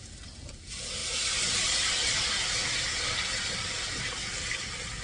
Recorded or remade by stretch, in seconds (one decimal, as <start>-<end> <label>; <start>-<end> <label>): 0.0-5.0 recorded